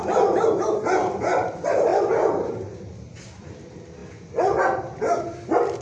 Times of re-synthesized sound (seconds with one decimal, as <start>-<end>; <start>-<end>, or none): none